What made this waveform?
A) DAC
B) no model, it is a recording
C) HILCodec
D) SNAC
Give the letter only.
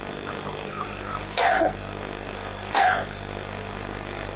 D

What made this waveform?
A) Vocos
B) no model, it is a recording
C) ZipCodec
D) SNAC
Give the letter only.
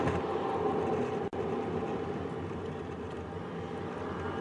B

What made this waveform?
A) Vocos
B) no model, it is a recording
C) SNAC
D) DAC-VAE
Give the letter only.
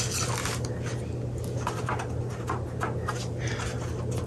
B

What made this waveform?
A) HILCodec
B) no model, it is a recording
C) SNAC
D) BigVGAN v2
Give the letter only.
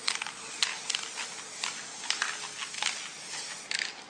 B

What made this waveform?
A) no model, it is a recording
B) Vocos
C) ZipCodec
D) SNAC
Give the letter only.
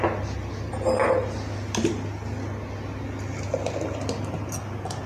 A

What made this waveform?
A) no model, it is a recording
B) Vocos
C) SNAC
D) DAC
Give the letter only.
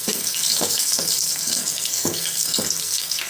C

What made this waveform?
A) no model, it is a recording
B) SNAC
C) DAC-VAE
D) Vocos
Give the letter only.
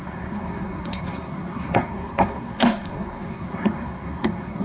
B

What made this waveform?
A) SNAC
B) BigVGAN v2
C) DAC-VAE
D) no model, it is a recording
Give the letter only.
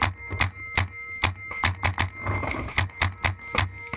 D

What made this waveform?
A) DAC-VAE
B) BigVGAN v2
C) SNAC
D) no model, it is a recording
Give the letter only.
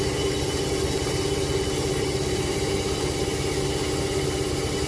D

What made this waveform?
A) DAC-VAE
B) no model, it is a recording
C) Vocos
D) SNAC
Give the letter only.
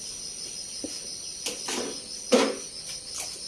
B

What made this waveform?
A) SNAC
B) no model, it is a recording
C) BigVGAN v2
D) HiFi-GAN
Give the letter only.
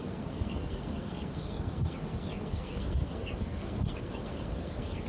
A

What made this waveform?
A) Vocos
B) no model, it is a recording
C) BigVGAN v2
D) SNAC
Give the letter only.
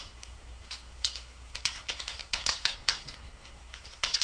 D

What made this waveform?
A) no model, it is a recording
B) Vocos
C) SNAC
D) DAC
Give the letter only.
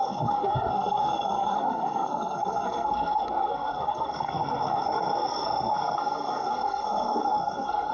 C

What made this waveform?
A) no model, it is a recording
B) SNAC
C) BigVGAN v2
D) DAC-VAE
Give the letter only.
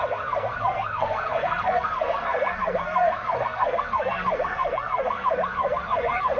B